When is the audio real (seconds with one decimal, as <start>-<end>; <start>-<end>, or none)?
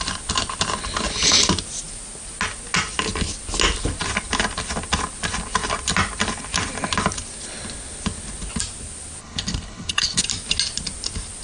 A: 0.0-9.2; 10.2-11.4